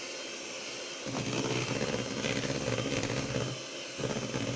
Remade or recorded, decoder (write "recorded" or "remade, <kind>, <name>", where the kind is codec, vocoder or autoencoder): recorded